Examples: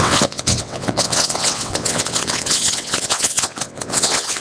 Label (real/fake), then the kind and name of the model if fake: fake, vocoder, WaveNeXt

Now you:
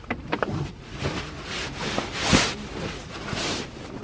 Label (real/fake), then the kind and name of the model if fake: real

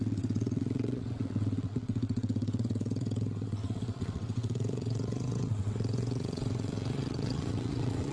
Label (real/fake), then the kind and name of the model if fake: fake, vocoder, WaveNeXt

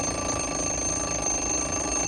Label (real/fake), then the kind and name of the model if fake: real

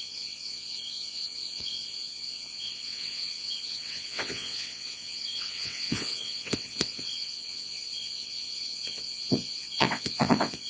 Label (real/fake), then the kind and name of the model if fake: fake, vocoder, WaveNeXt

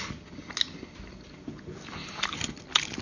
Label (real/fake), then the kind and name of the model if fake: real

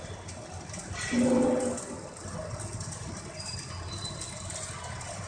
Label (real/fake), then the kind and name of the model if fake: real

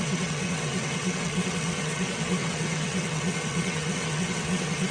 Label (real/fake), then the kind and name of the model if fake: fake, vocoder, WaveNeXt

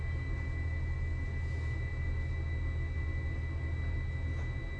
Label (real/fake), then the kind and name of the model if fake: real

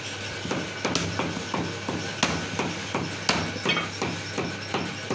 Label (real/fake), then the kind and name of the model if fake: real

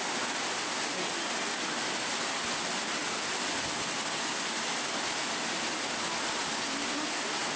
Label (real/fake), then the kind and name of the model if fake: real